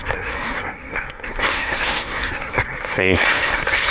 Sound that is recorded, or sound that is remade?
remade